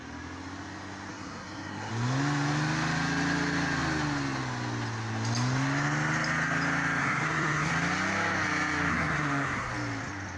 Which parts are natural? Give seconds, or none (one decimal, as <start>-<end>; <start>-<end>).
0.0-1.1; 1.9-7.0; 7.7-8.9; 9.7-10.4